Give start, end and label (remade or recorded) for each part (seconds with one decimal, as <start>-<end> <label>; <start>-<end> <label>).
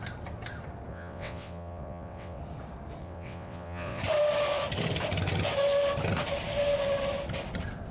0.0-0.9 recorded; 0.9-2.4 remade; 2.4-3.0 recorded; 3.0-4.0 remade; 4.0-7.9 recorded